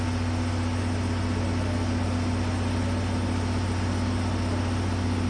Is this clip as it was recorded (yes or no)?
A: yes